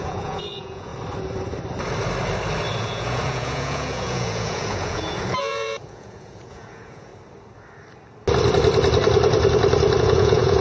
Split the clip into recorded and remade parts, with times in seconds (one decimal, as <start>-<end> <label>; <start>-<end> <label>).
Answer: 0.0-0.9 remade; 0.9-2.8 recorded; 2.8-7.1 remade; 7.1-10.0 recorded; 10.0-10.6 remade